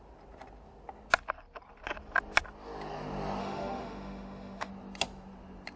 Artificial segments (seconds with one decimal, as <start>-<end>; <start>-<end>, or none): 3.4-4.7